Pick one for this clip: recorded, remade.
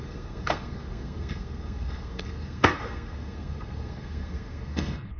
remade